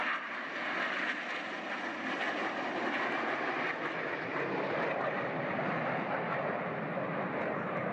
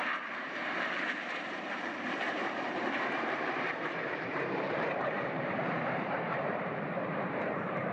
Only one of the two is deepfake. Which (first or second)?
second